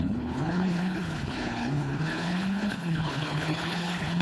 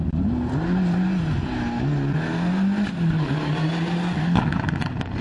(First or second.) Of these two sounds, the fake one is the first